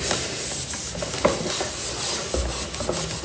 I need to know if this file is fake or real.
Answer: real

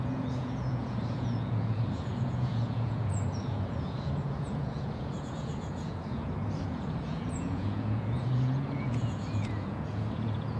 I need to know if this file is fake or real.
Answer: fake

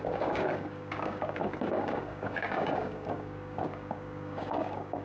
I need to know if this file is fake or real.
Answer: fake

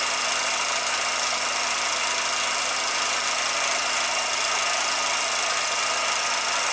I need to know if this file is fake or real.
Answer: real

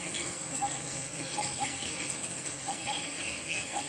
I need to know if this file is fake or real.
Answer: fake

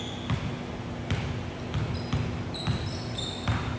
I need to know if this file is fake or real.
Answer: real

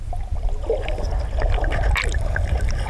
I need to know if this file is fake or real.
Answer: real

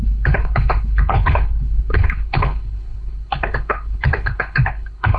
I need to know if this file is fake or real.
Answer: fake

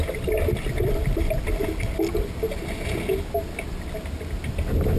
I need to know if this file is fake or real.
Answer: real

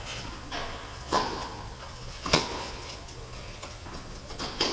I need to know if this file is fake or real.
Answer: fake